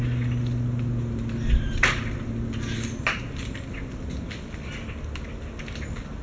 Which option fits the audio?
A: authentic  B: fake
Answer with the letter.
A